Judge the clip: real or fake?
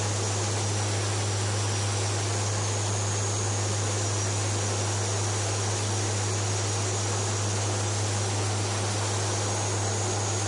real